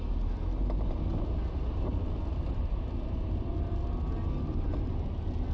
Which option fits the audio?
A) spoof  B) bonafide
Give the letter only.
B